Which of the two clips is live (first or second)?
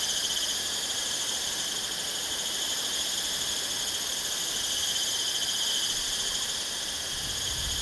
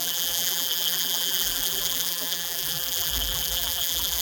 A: first